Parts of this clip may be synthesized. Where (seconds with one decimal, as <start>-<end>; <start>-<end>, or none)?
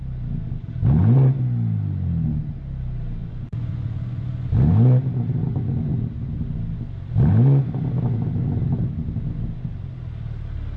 3.2-4.5